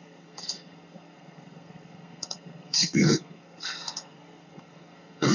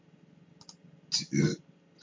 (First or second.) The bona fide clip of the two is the second